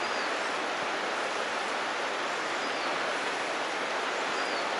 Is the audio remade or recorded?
recorded